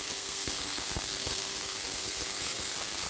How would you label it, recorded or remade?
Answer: remade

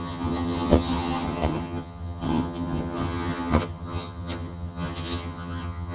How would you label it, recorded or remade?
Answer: remade